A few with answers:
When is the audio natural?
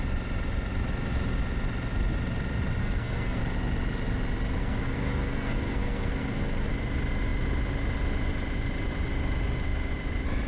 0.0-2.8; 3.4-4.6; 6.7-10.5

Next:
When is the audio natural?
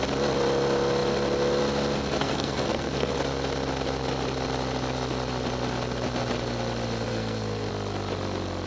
0.0-2.2; 3.1-7.1; 7.7-8.7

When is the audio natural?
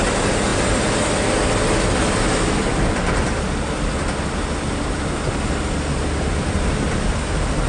0.0-7.7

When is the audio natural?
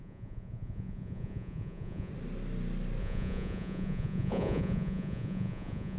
2.1-3.0